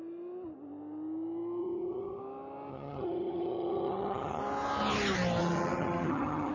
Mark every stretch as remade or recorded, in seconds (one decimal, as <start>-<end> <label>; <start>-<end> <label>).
0.0-1.6 recorded; 1.6-2.2 remade; 2.2-2.7 recorded; 2.7-4.4 remade; 4.4-5.4 recorded; 5.4-6.5 remade